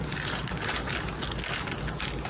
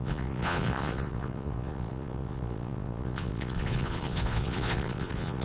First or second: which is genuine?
first